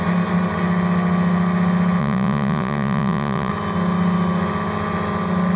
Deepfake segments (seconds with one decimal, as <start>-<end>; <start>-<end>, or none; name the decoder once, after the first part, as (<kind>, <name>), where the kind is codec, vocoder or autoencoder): 2.0-3.5 (vocoder, Vocos)